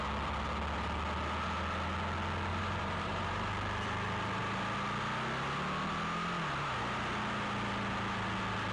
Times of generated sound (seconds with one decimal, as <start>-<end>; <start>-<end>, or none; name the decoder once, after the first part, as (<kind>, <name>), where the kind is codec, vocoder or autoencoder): 2.5-3.5 (vocoder, BigVGAN v2)